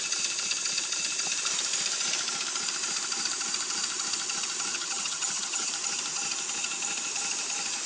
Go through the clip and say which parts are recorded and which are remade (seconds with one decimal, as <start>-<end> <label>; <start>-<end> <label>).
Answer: 0.0-4.7 recorded; 4.7-5.7 remade; 5.7-7.9 recorded